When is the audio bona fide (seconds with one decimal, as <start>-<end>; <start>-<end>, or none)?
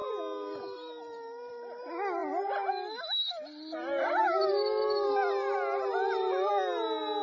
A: 0.0-7.2